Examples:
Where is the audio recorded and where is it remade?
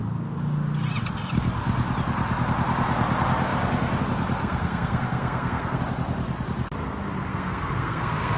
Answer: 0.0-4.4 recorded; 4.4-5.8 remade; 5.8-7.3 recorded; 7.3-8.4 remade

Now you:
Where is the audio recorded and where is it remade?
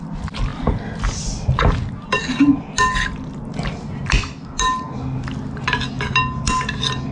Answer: 0.0-7.1 recorded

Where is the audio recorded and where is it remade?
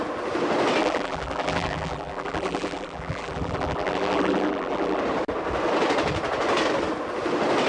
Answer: 0.0-0.8 recorded; 0.8-5.0 remade; 5.0-7.7 recorded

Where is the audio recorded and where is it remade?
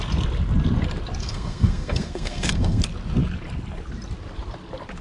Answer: 0.0-1.2 recorded; 1.2-2.8 remade; 2.8-5.0 recorded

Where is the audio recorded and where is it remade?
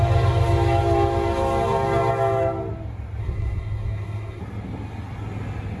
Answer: 0.0-3.2 recorded; 3.2-4.4 remade; 4.4-5.8 recorded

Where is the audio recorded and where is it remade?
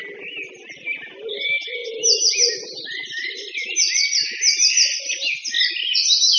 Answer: 0.0-6.4 recorded